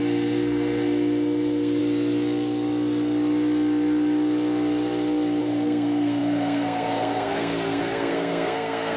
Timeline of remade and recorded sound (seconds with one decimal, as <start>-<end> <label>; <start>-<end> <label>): 0.0-1.8 remade; 1.8-5.4 recorded; 5.4-9.0 remade

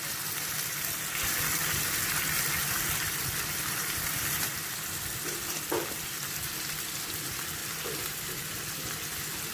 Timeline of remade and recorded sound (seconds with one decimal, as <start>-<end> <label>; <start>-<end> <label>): 0.0-9.5 recorded

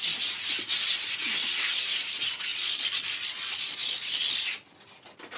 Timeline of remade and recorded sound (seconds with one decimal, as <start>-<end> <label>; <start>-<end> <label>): 0.0-2.5 recorded; 2.5-4.5 remade; 4.5-5.4 recorded

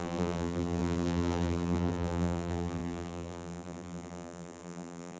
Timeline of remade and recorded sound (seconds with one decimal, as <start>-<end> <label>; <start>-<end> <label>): 0.0-5.2 remade